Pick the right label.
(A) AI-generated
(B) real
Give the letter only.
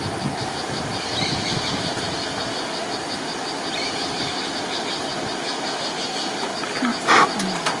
B